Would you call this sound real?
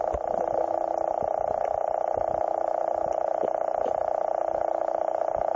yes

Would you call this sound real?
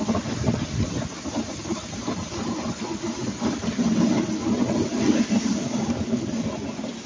yes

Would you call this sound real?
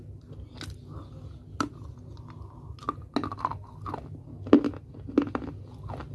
yes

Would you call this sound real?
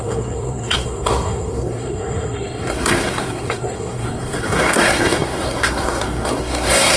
no